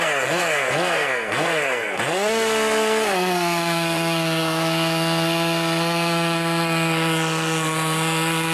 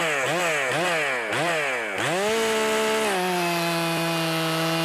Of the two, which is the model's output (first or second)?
first